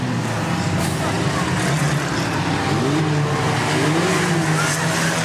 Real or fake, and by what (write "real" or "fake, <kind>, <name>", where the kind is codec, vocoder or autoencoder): real